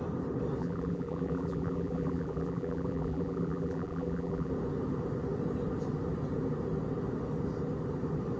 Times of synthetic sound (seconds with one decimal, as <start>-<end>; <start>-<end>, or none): 0.6-4.5